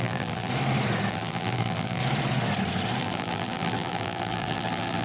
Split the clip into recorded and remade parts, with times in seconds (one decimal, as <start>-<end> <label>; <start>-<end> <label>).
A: 0.0-0.5 remade; 0.5-1.1 recorded; 1.1-2.0 remade; 2.0-3.0 recorded; 3.0-5.0 remade